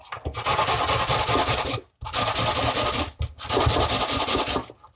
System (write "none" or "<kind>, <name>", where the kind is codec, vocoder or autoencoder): none